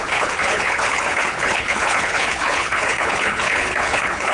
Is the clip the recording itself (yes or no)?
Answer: no